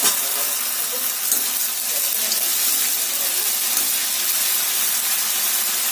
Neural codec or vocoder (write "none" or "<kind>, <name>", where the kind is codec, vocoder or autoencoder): none